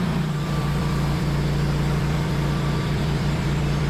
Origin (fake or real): fake